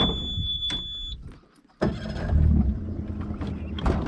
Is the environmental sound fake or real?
real